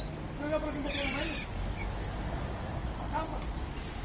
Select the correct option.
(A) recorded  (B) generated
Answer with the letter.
A